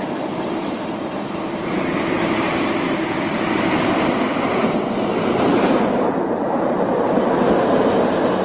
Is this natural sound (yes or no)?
no